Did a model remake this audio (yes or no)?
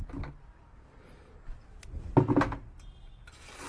no